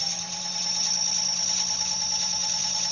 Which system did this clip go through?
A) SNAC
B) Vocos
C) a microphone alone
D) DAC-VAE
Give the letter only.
C